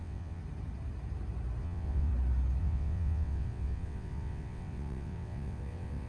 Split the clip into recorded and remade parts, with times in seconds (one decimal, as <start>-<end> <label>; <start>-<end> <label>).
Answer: 0.0-0.4 remade; 0.4-1.6 recorded; 1.6-2.1 remade; 2.1-2.6 recorded; 2.6-6.1 remade

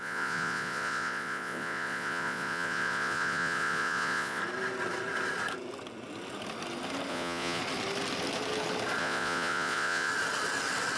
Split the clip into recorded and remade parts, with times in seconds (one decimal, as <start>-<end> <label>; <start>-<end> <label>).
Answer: 0.0-4.4 remade; 4.4-7.1 recorded; 7.1-7.6 remade; 7.6-9.0 recorded; 9.0-10.1 remade; 10.1-11.0 recorded

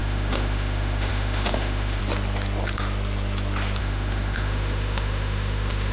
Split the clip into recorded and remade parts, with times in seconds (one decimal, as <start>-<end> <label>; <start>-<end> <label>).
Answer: 0.0-2.0 remade; 2.0-3.8 recorded; 3.8-5.9 remade

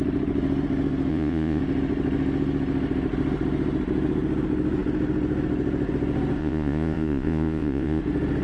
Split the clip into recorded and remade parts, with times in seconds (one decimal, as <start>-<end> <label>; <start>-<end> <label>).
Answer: 0.0-1.1 recorded; 1.1-1.6 remade; 1.6-6.4 recorded; 6.4-8.0 remade; 8.0-8.4 recorded